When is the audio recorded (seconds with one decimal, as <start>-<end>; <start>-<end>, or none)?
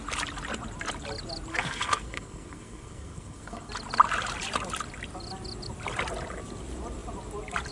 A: 0.0-1.5; 3.7-7.7